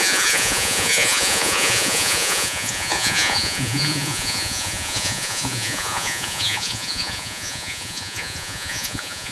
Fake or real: fake